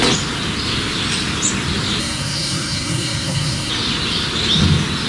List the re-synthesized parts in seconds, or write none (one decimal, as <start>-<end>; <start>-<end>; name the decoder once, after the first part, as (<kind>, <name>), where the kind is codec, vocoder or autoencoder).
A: 2.0-3.7 (codec, SNAC)